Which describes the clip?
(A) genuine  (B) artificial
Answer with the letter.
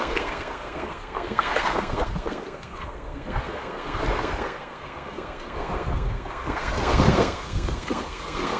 B